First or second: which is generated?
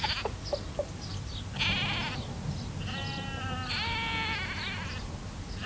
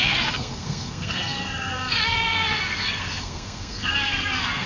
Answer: second